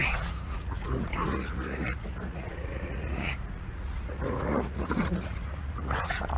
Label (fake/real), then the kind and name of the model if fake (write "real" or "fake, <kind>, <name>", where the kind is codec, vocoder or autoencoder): fake, vocoder, Vocos